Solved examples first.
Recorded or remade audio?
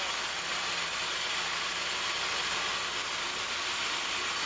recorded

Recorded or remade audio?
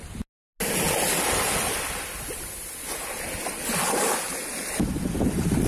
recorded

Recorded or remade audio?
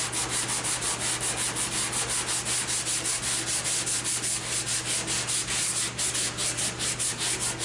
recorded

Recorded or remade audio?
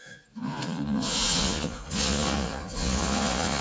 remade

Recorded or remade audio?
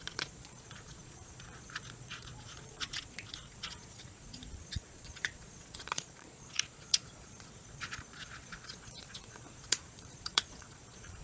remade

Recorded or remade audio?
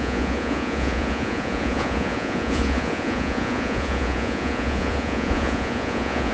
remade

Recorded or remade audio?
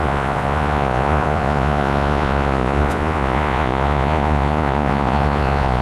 remade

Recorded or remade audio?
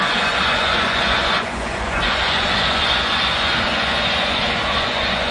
remade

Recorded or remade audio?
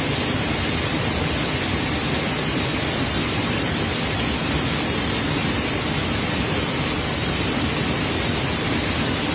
recorded